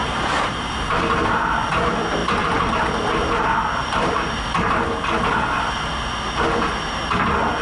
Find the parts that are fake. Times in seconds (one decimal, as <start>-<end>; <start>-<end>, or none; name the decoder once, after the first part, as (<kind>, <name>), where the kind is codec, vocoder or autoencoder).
0.0-1.0 (vocoder, BigVGAN v2); 3.8-4.4